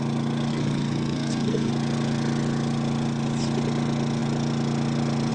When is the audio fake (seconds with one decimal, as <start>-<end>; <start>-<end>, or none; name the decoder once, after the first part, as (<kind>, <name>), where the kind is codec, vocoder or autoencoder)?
0.5-1.7 (codec, SNAC)